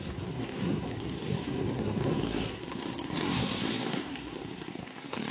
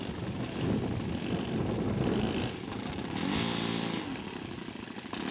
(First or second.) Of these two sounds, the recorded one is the second